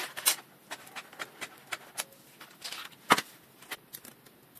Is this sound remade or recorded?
recorded